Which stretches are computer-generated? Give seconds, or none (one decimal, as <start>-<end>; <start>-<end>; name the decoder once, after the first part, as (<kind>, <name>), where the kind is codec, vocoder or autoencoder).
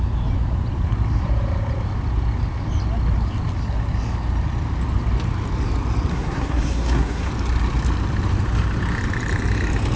6.1-7.3 (codec, SNAC)